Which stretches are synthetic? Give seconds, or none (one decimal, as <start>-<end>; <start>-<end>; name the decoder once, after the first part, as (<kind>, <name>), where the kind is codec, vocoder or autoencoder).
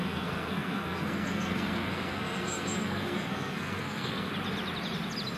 0.0-4.3 (codec, SNAC)